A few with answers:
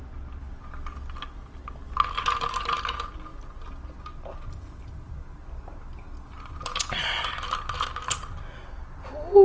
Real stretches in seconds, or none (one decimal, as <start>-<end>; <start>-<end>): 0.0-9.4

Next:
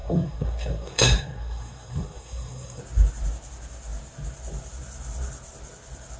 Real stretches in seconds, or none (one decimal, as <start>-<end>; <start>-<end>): 2.8-6.2

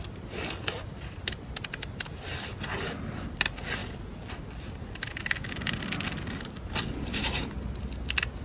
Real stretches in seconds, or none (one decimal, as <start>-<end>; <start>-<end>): 0.0-8.4